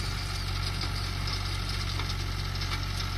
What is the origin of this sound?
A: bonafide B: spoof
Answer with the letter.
A